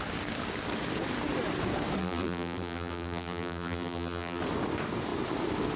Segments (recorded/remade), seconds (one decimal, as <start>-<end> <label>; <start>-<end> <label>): 0.0-2.0 recorded; 2.0-4.4 remade; 4.4-5.8 recorded

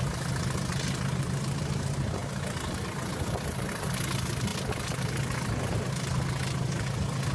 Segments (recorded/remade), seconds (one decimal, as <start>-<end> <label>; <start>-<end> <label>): 0.0-7.3 recorded